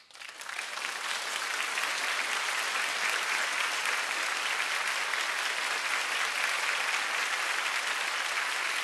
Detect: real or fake real